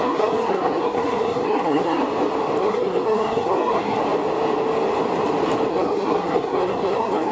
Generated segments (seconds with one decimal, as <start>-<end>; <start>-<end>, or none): 0.0-2.0; 2.6-4.0; 5.7-7.3